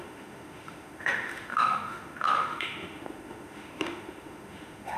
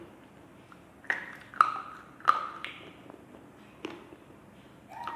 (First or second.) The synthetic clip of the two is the first